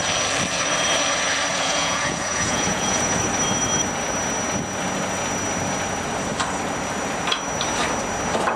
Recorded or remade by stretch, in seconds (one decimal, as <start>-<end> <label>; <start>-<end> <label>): 0.0-1.5 recorded; 1.5-3.2 remade; 3.2-8.6 recorded

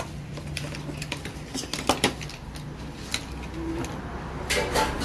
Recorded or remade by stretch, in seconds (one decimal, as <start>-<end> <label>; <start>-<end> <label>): 0.0-5.0 recorded